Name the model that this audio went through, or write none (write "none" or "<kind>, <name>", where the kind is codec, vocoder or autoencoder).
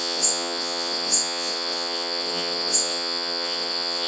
vocoder, WaveNeXt